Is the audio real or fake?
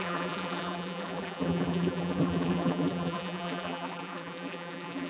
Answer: fake